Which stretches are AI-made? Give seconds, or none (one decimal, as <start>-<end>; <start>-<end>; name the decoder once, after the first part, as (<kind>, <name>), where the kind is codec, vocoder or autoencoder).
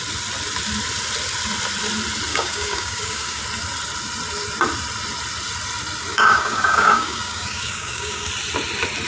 2.3-3.4 (codec, DAC); 6.1-8.3